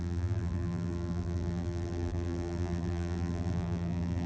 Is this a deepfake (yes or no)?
yes